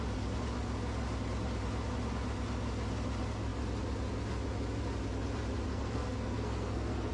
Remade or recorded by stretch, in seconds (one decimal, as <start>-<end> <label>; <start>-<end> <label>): 0.0-5.7 recorded; 5.7-7.1 remade